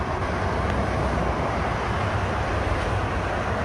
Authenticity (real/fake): real